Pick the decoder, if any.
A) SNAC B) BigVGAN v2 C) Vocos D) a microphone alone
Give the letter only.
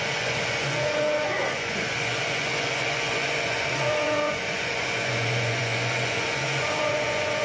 C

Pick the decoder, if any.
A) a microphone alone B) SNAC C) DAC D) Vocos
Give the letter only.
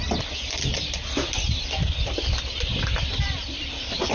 A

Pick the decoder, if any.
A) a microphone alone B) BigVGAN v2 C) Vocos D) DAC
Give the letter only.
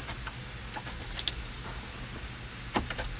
A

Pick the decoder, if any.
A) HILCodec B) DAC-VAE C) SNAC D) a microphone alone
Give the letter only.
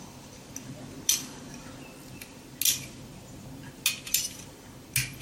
D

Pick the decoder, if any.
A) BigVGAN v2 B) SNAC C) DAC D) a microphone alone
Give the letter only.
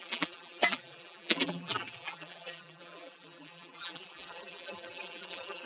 A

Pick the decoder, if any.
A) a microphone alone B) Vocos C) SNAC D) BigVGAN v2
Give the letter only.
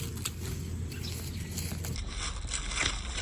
A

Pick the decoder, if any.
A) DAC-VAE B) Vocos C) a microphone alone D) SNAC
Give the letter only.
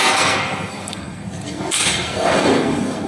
D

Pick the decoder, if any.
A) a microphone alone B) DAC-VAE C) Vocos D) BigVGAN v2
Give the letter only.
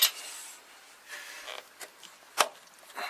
A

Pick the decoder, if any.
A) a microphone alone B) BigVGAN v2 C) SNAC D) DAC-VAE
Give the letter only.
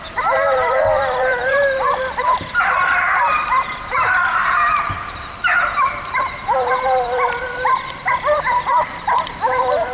B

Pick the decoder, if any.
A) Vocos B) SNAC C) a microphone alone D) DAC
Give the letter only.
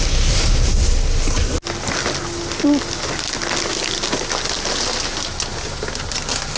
C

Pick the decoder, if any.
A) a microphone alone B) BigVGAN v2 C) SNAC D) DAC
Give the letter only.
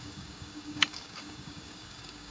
D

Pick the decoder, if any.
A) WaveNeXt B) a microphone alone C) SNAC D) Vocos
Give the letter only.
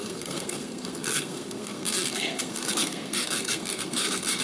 C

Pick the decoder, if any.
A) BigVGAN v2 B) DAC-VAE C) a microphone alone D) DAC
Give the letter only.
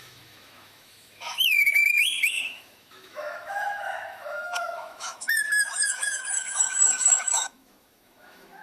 B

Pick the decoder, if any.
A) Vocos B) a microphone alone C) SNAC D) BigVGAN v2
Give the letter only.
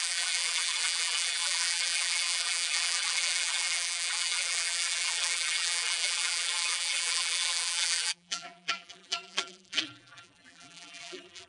D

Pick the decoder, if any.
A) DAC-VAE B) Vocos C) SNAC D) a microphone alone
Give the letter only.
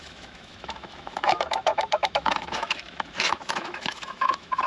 A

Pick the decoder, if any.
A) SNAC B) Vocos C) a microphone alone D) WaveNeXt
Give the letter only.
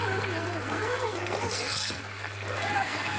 A